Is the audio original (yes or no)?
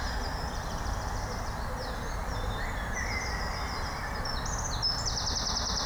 yes